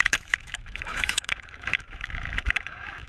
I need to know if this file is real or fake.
fake